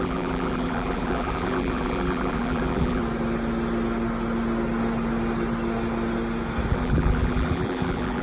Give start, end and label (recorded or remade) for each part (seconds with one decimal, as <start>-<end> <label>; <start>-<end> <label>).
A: 0.0-3.0 remade; 3.0-6.7 recorded; 6.7-8.2 remade